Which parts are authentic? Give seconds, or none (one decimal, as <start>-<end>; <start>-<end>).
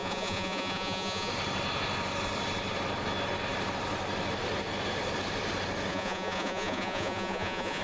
1.3-5.9